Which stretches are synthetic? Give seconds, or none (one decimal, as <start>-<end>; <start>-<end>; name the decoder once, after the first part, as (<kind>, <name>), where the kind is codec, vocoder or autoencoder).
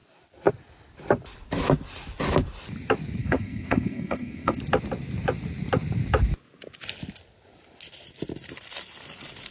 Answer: 3.2-4.6 (codec, SNAC)